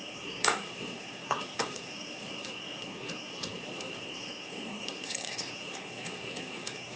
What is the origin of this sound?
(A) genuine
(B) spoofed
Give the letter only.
B